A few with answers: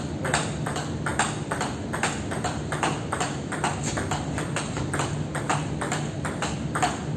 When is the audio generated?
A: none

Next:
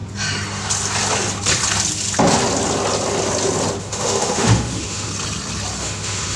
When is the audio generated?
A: 3.8-5.1 (autoencoder, DAC-VAE); 5.8-6.4